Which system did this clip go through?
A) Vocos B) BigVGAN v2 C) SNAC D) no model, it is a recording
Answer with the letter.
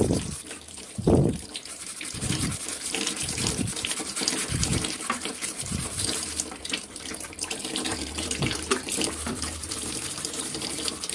B